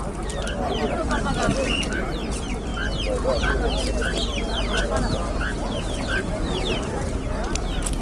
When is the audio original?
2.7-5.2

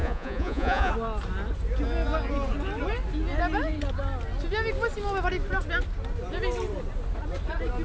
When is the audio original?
0.9-7.8

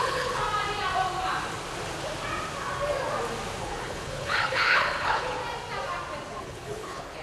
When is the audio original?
0.4-3.6; 5.4-6.4

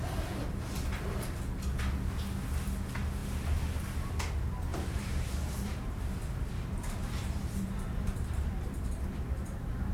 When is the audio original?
0.0-4.7

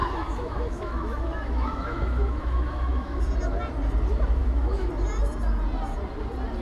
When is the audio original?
3.2-4.4; 4.9-6.6

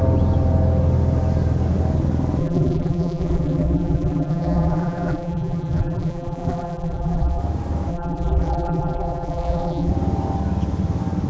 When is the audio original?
0.0-2.4; 7.4-7.9; 9.9-11.3